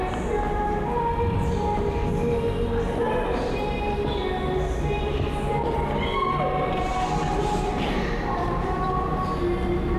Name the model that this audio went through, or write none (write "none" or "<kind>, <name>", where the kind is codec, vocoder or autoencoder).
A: none